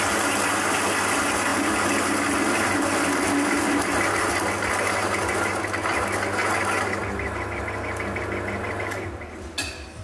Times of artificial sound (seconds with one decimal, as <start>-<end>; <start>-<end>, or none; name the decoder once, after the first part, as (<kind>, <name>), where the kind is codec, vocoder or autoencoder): none

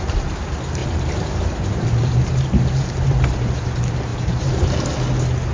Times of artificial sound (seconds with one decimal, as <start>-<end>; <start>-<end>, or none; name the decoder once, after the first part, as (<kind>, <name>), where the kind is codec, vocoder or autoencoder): 0.8-3.5 (vocoder, BigVGAN v2); 4.1-4.8

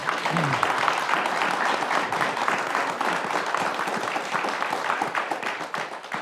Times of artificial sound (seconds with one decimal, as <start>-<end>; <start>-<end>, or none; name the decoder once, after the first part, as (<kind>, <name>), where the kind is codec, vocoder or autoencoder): 3.7-6.2 (vocoder, BigVGAN v2)

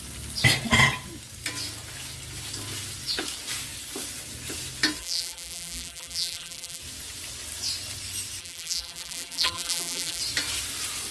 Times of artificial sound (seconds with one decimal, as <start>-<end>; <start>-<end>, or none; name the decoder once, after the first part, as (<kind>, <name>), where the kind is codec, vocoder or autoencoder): 5.0-6.8 (vocoder, BigVGAN v2); 8.4-10.2

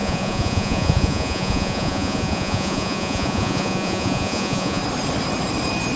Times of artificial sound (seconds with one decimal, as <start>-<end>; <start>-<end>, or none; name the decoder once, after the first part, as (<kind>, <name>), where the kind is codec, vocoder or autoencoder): 0.0-4.8 (vocoder, Vocos)

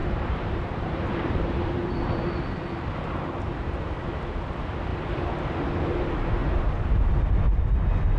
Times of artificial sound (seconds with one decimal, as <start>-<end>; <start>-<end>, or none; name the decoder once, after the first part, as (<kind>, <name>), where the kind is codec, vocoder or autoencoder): 0.0-3.8 (vocoder, BigVGAN v2); 6.4-7.1